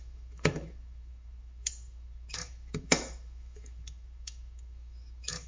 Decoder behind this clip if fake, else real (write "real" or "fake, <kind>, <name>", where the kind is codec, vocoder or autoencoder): fake, autoencoder, DAC-VAE